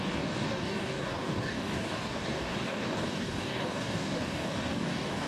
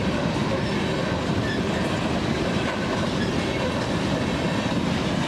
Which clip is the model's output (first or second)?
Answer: first